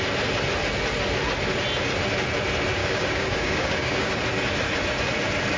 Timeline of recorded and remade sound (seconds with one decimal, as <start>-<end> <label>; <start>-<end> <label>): 0.0-2.8 recorded; 2.8-4.1 remade; 4.1-5.6 recorded